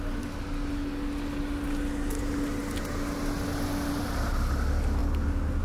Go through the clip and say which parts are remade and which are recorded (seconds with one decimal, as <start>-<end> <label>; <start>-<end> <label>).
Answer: 0.0-5.6 recorded